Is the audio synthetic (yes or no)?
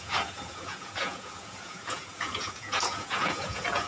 yes